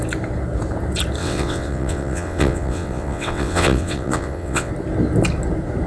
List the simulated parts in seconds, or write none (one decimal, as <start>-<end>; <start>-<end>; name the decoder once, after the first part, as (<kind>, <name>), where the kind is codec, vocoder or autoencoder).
1.2-4.7 (vocoder, WaveNeXt)